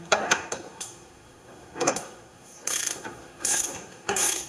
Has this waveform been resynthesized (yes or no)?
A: yes